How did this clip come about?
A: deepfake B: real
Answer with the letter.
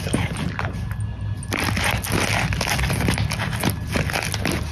B